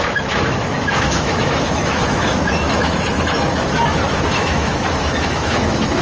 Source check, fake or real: fake